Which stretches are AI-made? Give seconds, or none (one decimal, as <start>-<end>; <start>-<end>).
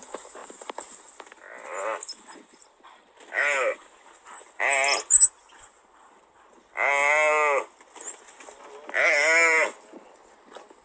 none